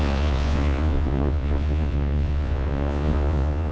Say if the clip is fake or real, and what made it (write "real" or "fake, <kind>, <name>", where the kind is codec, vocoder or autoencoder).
fake, vocoder, Vocos